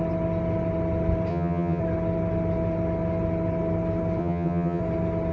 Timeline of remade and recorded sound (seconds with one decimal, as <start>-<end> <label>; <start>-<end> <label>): 0.0-1.3 recorded; 1.3-1.8 remade; 1.8-4.2 recorded; 4.2-4.8 remade; 4.8-5.3 recorded